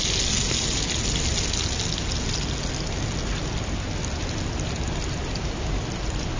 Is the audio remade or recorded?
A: recorded